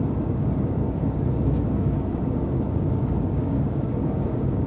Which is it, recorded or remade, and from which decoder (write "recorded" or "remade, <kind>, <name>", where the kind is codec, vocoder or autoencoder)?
remade, codec, DAC